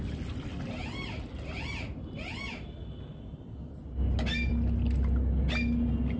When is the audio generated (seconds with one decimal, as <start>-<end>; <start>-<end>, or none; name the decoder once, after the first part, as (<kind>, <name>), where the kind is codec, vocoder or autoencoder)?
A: none